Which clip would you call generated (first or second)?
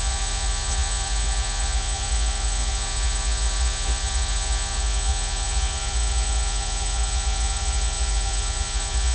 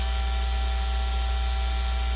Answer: first